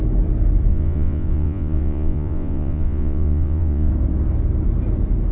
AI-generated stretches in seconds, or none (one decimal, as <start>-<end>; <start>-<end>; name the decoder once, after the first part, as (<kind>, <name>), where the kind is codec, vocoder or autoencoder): 0.7-3.9 (vocoder, Vocos)